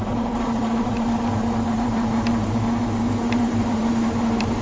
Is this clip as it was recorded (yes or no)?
no